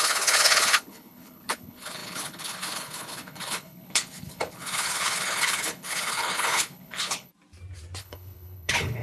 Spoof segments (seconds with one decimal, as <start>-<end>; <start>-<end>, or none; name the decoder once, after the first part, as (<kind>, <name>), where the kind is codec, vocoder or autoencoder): 0.0-7.3 (codec, HILCodec); 8.0-9.0